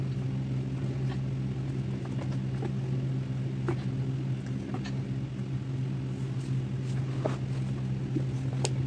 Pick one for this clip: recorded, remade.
recorded